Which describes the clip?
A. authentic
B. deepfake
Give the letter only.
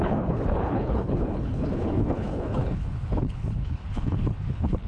B